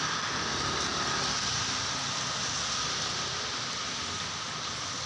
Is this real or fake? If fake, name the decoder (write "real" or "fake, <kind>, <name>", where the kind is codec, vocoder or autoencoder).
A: real